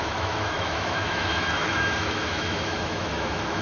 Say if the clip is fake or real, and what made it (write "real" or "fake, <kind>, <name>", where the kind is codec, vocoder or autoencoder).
fake, autoencoder, DAC-VAE